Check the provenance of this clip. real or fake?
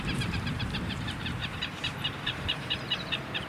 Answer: fake